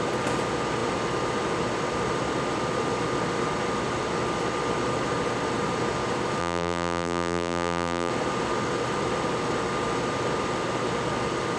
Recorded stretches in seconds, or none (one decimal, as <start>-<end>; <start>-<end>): 0.0-6.4; 8.1-11.6